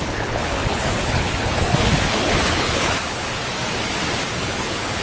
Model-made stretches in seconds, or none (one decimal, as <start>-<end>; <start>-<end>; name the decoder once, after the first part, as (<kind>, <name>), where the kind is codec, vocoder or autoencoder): 0.0-3.4 (codec, HILCodec); 4.4-5.0